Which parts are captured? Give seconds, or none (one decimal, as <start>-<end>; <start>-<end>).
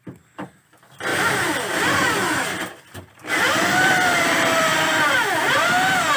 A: 0.0-1.1; 4.8-6.2